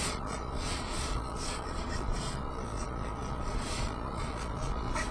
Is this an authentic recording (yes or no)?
no